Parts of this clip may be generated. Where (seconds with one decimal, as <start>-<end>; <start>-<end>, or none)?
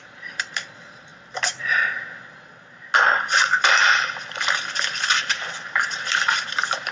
0.0-1.1; 4.0-6.9